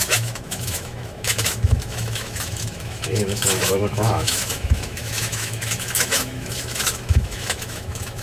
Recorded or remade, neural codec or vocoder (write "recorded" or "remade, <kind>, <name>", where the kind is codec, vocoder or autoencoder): remade, autoencoder, DAC-VAE